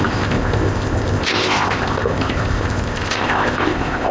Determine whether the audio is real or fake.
fake